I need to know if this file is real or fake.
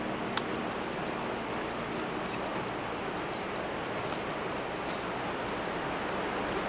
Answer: real